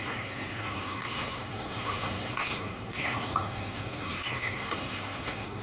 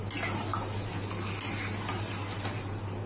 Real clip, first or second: second